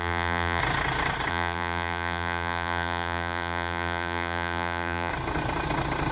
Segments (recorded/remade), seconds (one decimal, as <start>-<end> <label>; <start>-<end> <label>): 0.0-0.6 remade; 0.6-1.3 recorded; 1.3-5.1 remade; 5.1-6.1 recorded